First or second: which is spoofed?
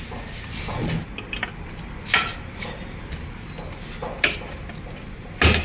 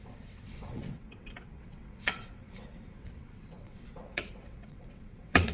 second